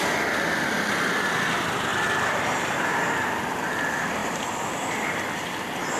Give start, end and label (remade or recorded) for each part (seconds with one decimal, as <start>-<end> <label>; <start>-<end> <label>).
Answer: 0.0-6.0 recorded

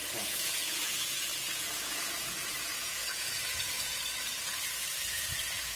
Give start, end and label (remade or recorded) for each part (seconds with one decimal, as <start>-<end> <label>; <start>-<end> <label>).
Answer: 0.0-5.8 remade

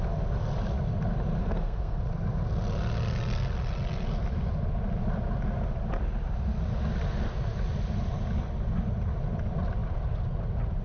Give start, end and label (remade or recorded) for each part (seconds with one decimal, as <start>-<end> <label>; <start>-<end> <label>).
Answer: 0.0-1.4 recorded; 1.4-2.0 remade; 2.0-10.8 recorded

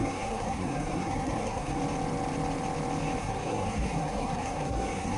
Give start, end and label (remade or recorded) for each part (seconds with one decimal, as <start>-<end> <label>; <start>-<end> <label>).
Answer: 0.0-1.8 remade; 1.8-3.2 recorded; 3.2-5.2 remade

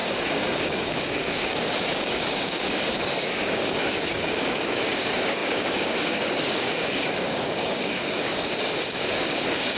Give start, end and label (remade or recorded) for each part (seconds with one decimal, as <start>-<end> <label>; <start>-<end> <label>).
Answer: 0.0-9.8 remade

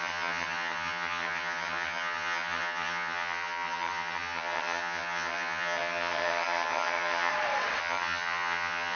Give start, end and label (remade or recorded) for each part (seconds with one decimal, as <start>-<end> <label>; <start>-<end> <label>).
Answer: 0.0-7.3 remade; 7.3-7.8 recorded; 7.8-9.0 remade

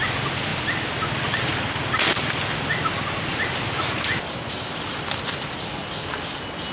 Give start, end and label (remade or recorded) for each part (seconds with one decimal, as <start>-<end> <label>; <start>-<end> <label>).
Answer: 0.0-6.7 recorded